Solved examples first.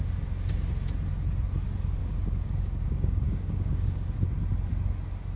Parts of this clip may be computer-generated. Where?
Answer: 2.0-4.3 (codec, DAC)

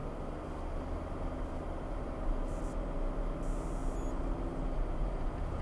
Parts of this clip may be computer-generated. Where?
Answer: none

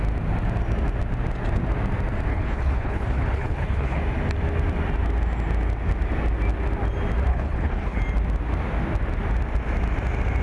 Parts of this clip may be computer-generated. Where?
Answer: 2.3-4.0 (codec, HILCodec); 7.3-8.0